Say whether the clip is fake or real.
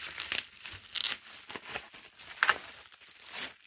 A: real